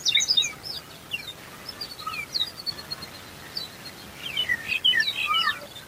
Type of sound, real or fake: real